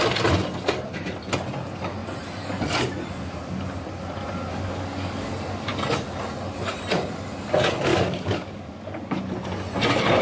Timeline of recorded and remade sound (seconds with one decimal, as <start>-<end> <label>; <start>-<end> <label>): 0.0-4.5 recorded; 4.5-5.3 remade; 5.3-7.9 recorded; 7.9-9.2 remade; 9.2-10.2 recorded